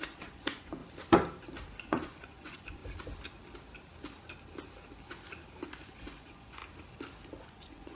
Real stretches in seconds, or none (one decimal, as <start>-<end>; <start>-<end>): 0.8-1.8; 2.8-5.7; 6.6-7.4